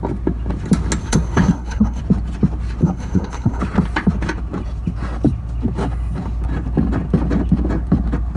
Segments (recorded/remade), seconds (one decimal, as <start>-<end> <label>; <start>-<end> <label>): 0.0-1.0 recorded; 1.0-2.0 remade; 2.0-2.8 recorded; 2.8-3.6 remade; 3.6-8.4 recorded